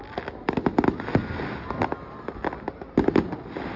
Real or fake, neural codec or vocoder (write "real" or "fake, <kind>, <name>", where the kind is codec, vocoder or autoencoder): real